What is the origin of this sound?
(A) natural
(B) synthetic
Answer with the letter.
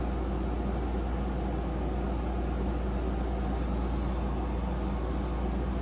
A